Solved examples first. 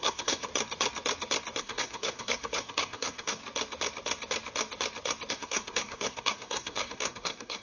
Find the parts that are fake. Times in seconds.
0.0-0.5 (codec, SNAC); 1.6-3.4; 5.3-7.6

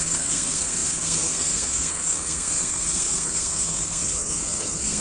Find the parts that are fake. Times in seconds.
0.0-5.0 (codec, SNAC)